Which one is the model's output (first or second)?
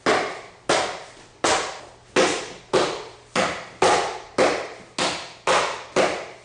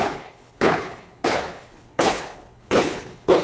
second